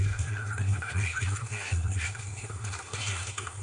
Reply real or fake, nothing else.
fake